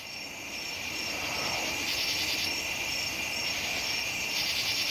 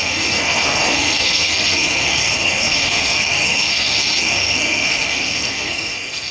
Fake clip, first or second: second